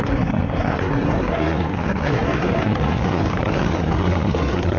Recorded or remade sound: remade